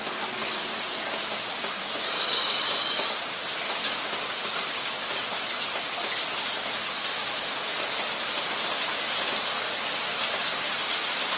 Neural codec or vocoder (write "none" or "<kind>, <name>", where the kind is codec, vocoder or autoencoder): none